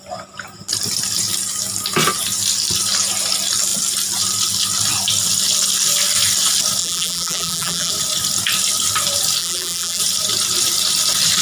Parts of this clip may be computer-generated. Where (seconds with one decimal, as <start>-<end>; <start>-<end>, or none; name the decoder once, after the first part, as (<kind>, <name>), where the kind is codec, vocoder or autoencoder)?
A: 6.8-7.9 (vocoder, BigVGAN v2); 9.4-10.0